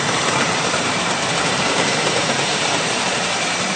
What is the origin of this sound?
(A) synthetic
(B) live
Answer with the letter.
A